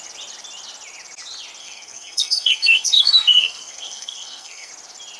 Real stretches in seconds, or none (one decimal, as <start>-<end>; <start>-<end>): 0.0-1.6; 4.7-5.2